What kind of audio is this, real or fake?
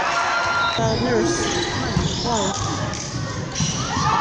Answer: real